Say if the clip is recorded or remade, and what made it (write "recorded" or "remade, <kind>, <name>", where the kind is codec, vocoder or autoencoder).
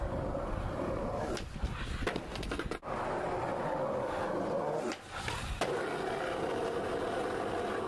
recorded